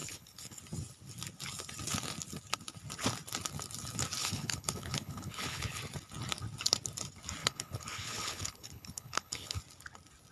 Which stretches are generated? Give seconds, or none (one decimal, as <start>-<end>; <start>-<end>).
0.0-0.6; 4.2-5.8; 7.4-9.6